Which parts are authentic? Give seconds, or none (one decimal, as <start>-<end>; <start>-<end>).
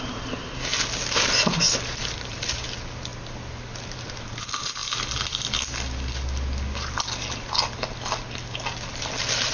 0.7-1.8; 3.1-3.8; 4.8-8.9